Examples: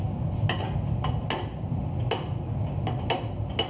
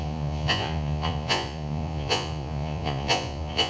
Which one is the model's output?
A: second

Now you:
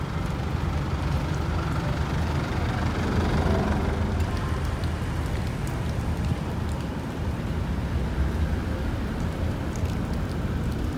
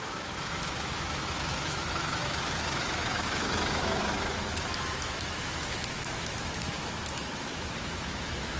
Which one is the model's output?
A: second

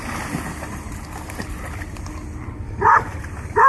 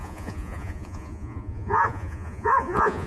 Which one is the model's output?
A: second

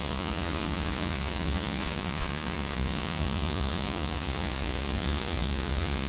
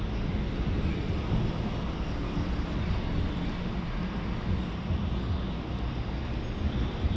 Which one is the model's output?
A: first